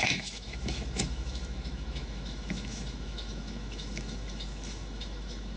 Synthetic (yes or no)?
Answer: yes